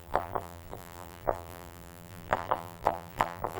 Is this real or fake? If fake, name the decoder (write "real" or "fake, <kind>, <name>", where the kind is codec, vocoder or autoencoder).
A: fake, vocoder, BigVGAN v2